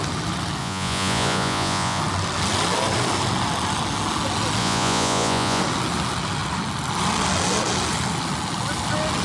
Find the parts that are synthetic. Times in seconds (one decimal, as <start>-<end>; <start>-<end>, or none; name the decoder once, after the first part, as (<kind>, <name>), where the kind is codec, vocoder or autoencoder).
0.6-2.0 (vocoder, Vocos); 4.6-5.6